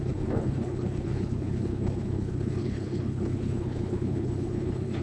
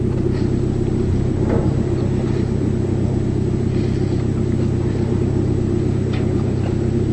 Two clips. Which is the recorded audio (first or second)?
second